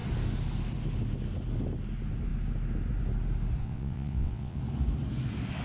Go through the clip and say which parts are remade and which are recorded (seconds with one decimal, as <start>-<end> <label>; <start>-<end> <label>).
0.0-3.6 recorded; 3.6-4.6 remade; 4.6-5.6 recorded